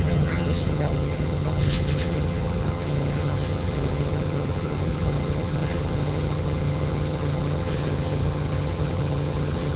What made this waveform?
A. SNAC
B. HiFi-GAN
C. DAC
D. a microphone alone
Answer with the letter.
B